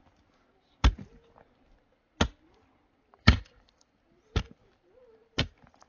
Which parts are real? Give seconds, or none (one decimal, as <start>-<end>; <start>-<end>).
0.0-3.1; 5.3-5.9